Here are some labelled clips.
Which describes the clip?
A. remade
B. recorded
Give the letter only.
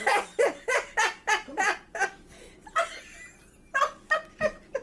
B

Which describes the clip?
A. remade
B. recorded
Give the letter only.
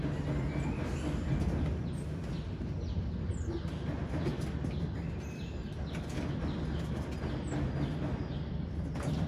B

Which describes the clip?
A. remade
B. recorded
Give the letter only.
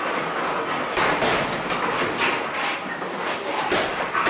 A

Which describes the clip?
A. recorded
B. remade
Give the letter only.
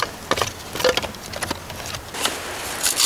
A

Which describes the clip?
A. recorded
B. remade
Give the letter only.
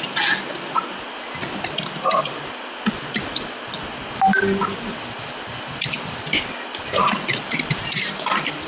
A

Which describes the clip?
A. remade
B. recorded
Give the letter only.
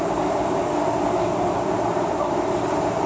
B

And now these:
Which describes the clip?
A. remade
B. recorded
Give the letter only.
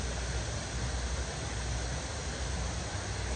B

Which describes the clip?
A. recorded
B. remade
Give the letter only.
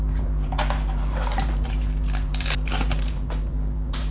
B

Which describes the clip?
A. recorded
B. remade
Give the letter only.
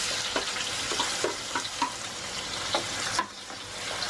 A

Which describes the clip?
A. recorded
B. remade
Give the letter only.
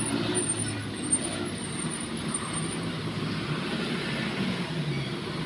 A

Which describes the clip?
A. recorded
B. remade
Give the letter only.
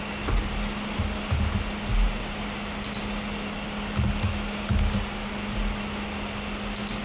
A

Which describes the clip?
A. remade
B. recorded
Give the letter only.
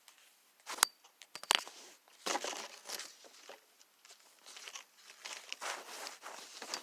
B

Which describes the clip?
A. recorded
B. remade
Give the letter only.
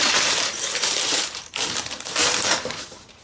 B